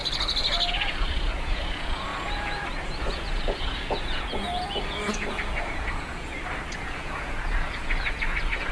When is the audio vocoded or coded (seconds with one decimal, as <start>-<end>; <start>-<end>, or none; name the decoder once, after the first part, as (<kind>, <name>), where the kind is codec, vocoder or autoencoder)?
0.7-8.7 (vocoder, Vocos)